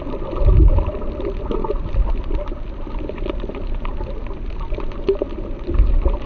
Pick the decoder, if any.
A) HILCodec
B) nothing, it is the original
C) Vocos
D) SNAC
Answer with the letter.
B